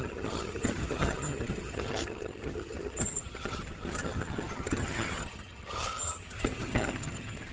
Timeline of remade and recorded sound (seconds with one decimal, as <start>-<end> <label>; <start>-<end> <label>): 0.0-7.5 remade